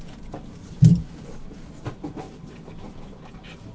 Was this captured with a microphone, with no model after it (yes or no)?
yes